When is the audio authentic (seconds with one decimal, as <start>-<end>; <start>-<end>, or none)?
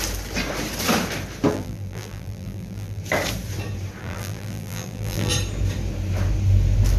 0.0-1.5; 3.0-4.0; 5.3-7.0